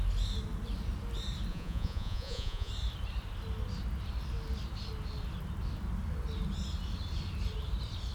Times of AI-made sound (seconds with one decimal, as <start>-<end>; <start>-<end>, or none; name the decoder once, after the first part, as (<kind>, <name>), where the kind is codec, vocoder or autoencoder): 1.5-2.7 (vocoder, Vocos)